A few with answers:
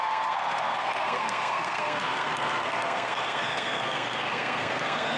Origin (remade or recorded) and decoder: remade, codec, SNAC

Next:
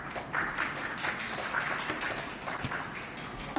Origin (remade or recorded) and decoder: recorded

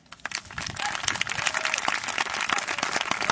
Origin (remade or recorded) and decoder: recorded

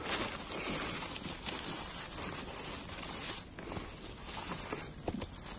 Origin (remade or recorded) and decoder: recorded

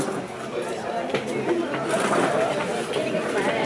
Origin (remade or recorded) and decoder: recorded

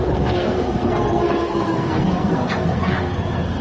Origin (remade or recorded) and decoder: remade, codec, SNAC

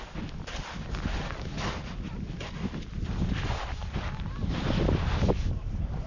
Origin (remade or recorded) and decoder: recorded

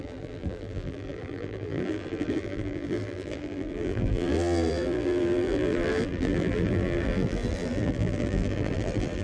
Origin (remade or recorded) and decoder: remade, vocoder, BigVGAN v2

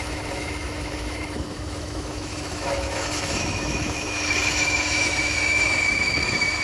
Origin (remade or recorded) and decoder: remade, autoencoder, DAC-VAE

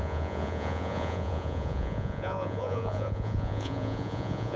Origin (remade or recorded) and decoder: remade, vocoder, Vocos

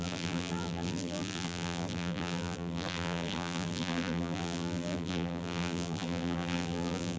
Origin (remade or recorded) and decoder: remade, vocoder, BigVGAN v2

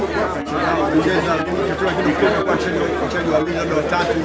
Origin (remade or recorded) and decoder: recorded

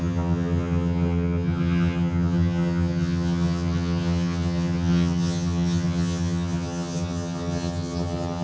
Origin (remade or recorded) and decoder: remade, vocoder, HiFi-GAN